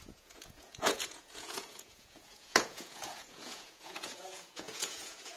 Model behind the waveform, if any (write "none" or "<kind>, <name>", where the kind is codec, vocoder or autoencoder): vocoder, Vocos